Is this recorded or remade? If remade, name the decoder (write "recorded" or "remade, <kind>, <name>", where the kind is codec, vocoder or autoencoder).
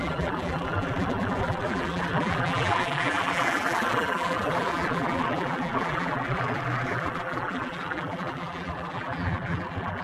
remade, vocoder, BigVGAN v2